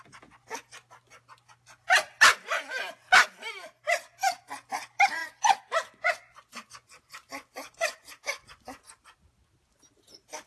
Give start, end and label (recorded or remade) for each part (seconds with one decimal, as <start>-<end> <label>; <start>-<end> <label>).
0.0-5.2 recorded; 5.2-8.8 remade; 8.8-10.5 recorded